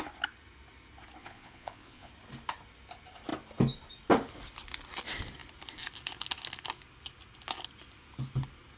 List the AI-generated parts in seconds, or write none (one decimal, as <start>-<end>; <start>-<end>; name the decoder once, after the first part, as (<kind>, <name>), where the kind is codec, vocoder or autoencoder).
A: 1.2-2.1 (vocoder, Vocos)